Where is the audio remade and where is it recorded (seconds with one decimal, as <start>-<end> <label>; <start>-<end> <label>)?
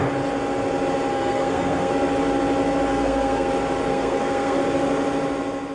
0.0-1.1 recorded; 1.1-1.9 remade; 1.9-2.9 recorded; 2.9-3.5 remade; 3.5-3.9 recorded; 3.9-4.6 remade; 4.6-5.7 recorded